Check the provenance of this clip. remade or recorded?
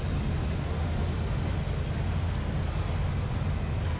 recorded